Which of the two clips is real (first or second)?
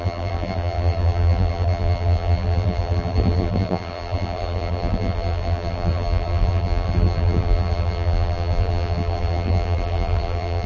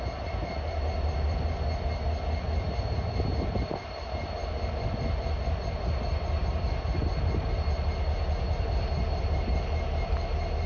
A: second